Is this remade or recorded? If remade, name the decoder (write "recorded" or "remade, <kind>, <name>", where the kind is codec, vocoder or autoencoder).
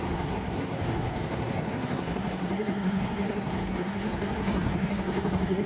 remade, codec, SNAC